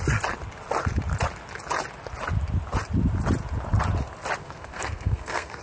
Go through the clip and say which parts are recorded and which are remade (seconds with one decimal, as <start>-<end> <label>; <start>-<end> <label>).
0.0-4.4 recorded; 4.4-5.6 remade